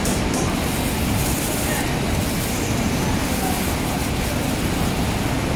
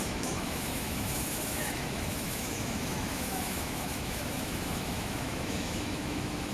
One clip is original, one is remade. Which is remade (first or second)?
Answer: second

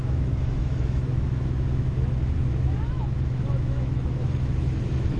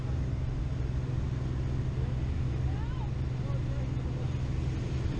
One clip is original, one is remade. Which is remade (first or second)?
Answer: first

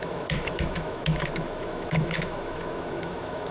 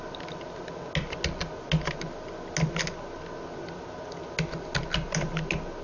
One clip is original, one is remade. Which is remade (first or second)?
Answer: first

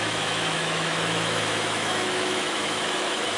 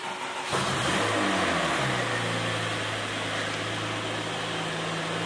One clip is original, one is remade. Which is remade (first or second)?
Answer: first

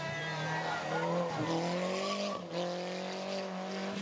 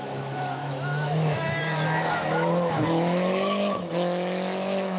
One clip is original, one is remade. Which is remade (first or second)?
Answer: second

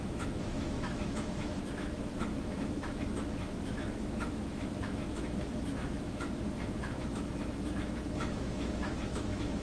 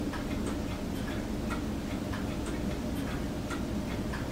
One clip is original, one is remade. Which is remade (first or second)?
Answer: first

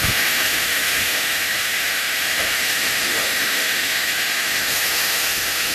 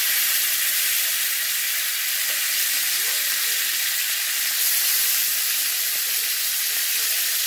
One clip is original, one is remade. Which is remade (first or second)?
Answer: first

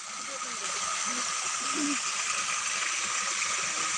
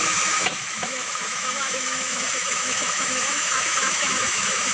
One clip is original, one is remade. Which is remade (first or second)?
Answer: second